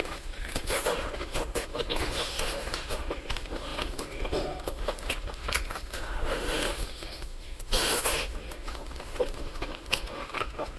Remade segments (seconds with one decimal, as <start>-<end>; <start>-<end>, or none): 0.0-10.8